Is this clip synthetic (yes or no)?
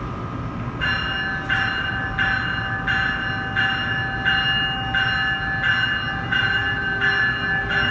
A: no